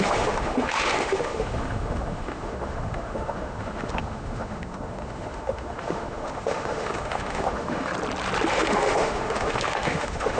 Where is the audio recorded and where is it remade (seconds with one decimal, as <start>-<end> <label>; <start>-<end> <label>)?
0.0-7.9 remade; 7.9-8.5 recorded; 8.5-10.4 remade